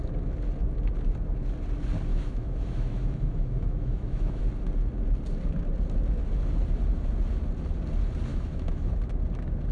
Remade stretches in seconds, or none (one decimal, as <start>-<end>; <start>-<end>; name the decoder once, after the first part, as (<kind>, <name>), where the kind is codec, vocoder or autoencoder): 2.1-4.4 (autoencoder, DAC-VAE); 8.3-8.9